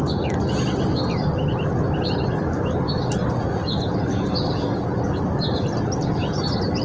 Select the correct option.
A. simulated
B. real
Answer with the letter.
B